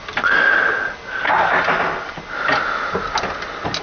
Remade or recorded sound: recorded